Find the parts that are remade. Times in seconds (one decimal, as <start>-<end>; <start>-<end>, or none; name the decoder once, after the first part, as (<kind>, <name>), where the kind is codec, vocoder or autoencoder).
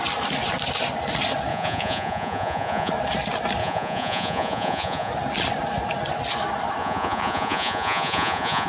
1.5-2.9 (vocoder, Vocos); 3.6-5.1; 6.8-8.7